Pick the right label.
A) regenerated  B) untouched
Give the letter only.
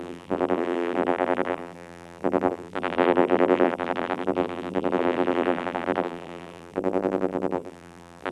A